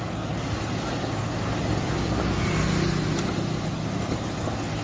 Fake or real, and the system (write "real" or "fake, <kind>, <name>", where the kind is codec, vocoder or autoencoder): real